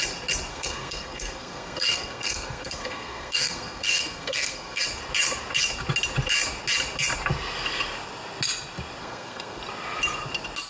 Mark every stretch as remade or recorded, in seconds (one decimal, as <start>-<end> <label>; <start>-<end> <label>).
0.0-0.5 recorded; 0.5-4.8 remade; 4.8-9.0 recorded; 9.0-9.6 remade; 9.6-10.7 recorded